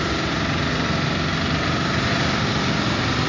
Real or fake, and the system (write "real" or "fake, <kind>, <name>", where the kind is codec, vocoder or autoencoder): real